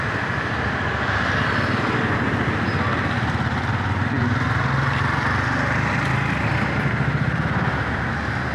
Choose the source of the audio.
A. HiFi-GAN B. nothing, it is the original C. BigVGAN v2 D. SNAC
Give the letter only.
B